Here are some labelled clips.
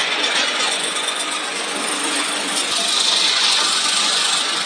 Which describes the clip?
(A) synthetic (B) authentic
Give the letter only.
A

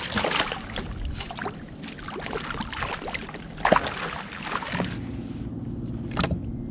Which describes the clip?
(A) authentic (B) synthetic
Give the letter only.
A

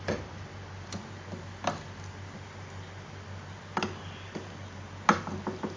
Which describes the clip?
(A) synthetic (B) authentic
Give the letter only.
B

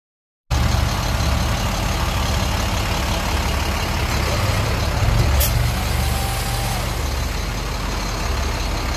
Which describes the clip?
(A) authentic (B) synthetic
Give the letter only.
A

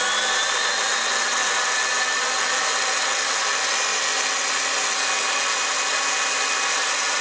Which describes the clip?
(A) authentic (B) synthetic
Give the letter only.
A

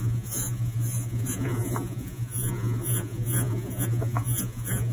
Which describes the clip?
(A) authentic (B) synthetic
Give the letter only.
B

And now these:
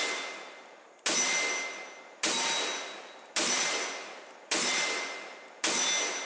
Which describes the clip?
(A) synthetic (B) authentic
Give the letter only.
B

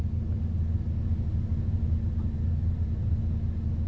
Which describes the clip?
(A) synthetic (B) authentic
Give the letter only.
B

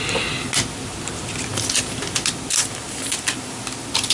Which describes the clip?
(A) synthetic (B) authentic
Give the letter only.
B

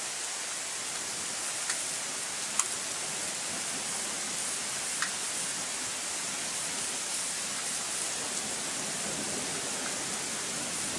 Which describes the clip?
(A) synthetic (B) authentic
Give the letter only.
B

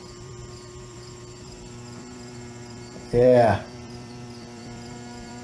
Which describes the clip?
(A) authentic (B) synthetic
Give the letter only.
B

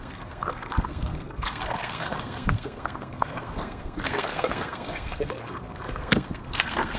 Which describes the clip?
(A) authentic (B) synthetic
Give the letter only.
B